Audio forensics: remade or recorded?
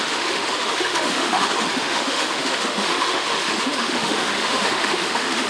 remade